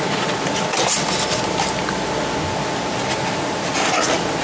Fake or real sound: real